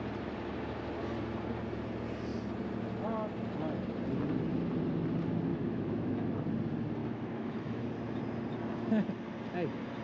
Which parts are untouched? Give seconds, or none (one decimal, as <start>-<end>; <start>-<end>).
0.0-5.5; 6.4-7.0; 7.8-10.0